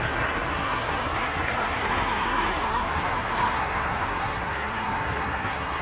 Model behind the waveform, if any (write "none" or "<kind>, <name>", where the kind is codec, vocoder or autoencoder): codec, SNAC